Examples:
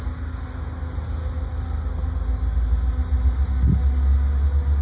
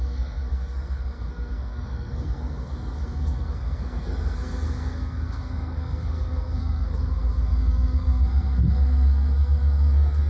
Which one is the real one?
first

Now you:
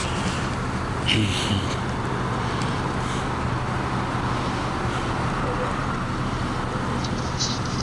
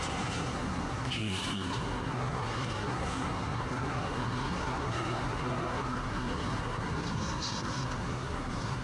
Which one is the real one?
first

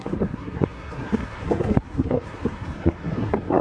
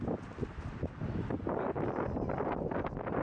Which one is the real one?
second